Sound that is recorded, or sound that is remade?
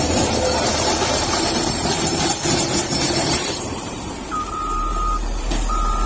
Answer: remade